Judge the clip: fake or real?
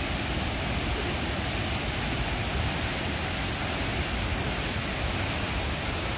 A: real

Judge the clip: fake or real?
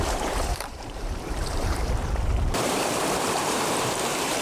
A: fake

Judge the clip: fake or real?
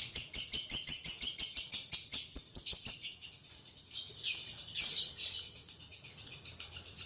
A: fake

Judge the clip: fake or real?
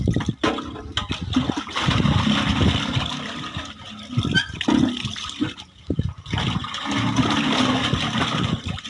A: real